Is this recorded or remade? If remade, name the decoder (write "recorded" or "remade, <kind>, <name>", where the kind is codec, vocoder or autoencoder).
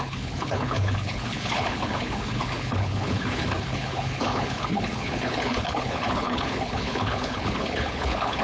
remade, codec, HILCodec